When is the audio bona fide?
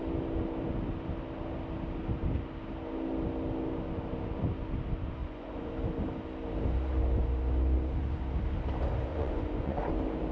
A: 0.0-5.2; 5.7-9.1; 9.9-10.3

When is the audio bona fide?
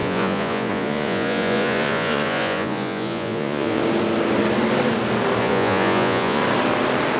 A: 3.8-5.4; 6.4-7.2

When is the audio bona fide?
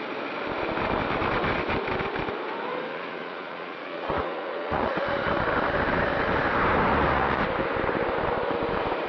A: 0.0-2.9; 5.3-6.9; 7.4-9.1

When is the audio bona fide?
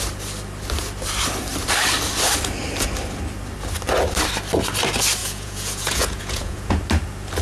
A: 0.0-5.2; 6.8-7.4